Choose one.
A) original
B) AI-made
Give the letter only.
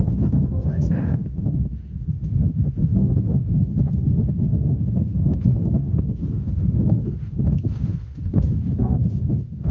B